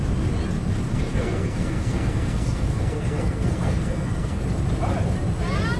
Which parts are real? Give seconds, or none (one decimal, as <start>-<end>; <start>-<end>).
0.0-0.9; 4.4-5.8